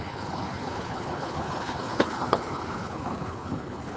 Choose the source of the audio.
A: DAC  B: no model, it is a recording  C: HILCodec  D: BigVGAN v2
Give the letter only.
C